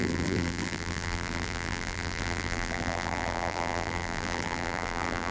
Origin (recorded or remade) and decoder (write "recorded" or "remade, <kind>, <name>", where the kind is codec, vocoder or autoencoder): remade, vocoder, BigVGAN v2